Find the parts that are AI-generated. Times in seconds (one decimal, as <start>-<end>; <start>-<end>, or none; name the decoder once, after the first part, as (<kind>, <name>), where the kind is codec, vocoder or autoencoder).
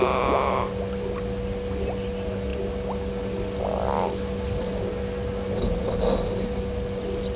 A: none